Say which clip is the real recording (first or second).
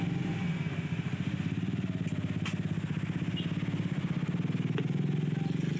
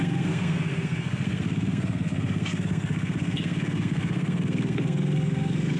first